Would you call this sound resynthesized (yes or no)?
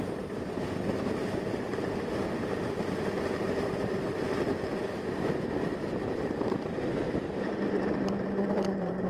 yes